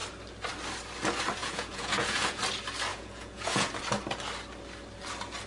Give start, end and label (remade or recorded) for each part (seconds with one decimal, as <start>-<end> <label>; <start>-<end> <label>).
0.0-1.4 recorded; 1.4-2.4 remade; 2.4-2.9 recorded; 2.9-3.7 remade; 3.7-5.5 recorded